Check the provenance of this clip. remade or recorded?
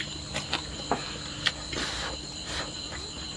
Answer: remade